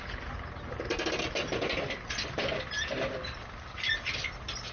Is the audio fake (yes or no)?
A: no